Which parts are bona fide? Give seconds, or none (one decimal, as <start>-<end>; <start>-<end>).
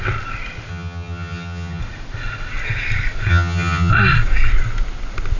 0.0-0.7; 1.8-3.3; 3.9-5.4